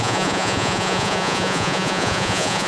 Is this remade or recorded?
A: remade